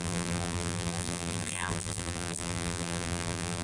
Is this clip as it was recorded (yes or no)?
no